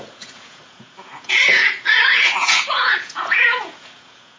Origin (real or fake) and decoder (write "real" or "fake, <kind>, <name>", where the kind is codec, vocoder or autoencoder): fake, vocoder, Vocos